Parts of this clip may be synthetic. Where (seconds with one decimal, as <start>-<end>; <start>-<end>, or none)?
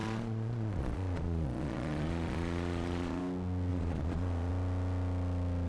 0.0-3.2; 3.7-4.5